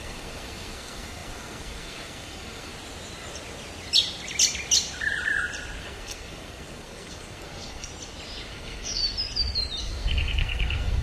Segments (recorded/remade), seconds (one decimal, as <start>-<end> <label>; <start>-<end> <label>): 0.0-2.7 remade; 2.7-5.8 recorded; 5.8-7.9 remade; 7.9-8.5 recorded; 8.5-9.0 remade; 9.0-9.8 recorded; 9.8-11.0 remade